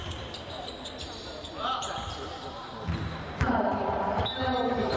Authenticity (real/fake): fake